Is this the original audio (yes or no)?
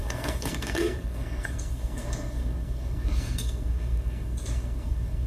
no